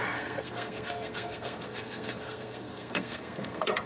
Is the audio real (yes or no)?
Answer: no